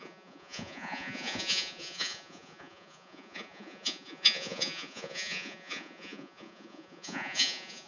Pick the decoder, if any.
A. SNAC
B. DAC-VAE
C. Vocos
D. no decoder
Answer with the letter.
C